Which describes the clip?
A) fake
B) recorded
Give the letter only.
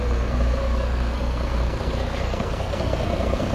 A